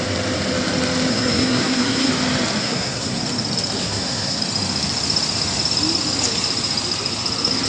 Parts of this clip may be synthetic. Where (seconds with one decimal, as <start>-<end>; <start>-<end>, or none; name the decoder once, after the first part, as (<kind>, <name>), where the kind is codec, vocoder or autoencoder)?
1.1-2.1 (codec, SNAC); 2.6-3.2; 3.8-4.4